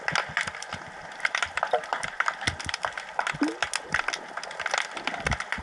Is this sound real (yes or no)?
yes